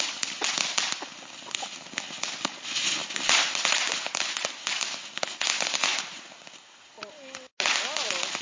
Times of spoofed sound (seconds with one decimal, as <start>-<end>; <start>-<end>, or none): 5.8-6.5